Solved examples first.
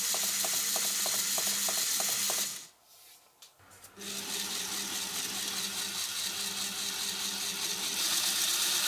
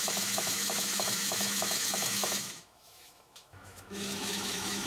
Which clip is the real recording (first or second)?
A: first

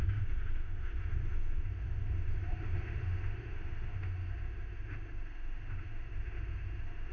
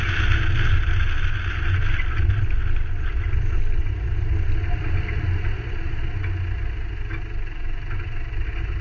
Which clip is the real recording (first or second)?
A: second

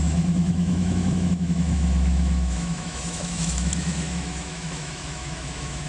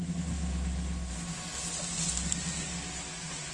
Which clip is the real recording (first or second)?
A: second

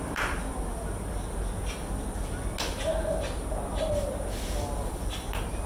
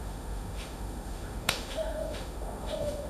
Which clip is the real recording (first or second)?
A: first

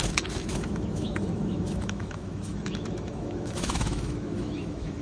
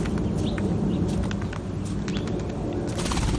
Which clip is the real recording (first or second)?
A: second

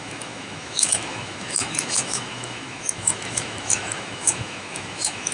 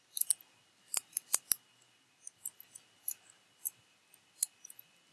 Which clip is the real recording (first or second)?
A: second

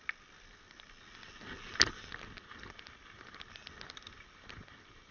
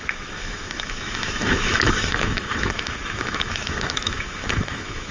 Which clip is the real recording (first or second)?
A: first